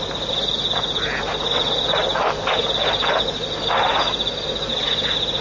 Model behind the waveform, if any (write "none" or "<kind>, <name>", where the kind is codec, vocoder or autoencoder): none